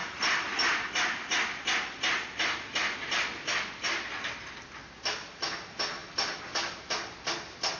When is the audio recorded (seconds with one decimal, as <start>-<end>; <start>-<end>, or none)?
0.0-7.8